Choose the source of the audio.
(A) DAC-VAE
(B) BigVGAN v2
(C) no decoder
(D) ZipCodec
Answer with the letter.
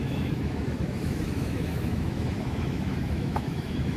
A